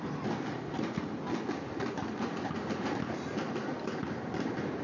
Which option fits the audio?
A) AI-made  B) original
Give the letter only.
B